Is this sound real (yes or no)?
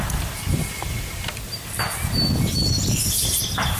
yes